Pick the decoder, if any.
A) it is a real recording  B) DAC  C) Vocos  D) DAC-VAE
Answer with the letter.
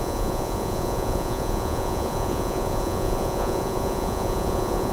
C